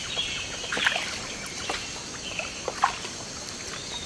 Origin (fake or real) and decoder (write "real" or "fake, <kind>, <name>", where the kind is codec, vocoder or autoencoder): real